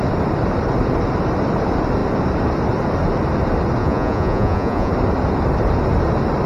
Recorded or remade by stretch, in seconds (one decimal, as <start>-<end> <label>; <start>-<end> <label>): 0.0-3.8 recorded; 3.8-4.9 remade; 4.9-6.5 recorded